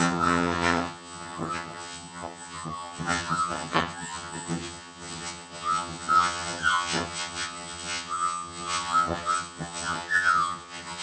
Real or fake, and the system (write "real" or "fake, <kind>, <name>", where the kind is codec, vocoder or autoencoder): fake, vocoder, HiFi-GAN